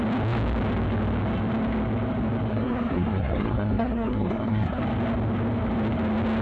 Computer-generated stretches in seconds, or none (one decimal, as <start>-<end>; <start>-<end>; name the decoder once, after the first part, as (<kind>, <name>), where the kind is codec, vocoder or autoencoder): 2.5-4.8 (codec, SNAC)